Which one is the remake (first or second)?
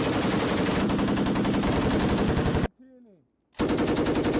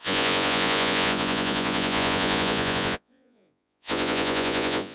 second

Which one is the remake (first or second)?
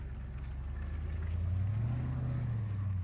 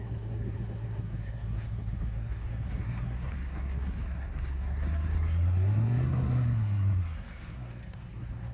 second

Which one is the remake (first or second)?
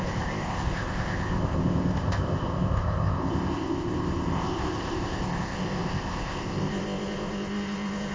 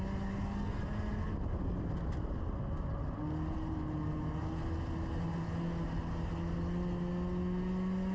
first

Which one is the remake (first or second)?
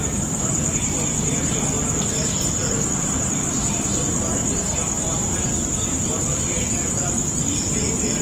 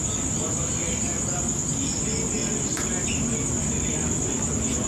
first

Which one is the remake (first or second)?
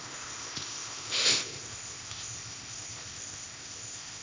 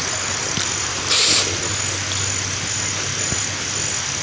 first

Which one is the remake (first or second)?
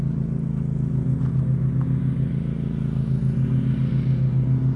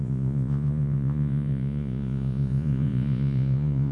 second